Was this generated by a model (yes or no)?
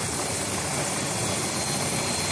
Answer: no